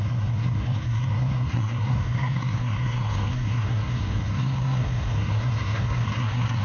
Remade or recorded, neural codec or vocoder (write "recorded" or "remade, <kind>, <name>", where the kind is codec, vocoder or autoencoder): remade, codec, SNAC